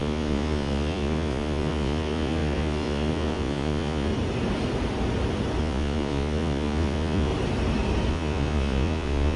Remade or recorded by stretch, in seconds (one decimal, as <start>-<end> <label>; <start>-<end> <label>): 0.0-4.1 remade; 4.1-5.6 recorded; 5.6-7.3 remade; 7.3-8.1 recorded; 8.1-9.4 remade